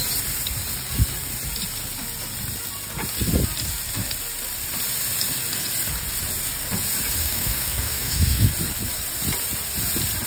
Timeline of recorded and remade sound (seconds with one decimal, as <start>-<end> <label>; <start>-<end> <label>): 0.0-7.2 recorded; 7.2-8.5 remade; 8.5-10.3 recorded